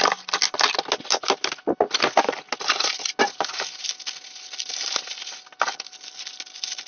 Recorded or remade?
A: recorded